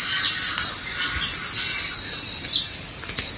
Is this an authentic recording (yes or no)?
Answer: yes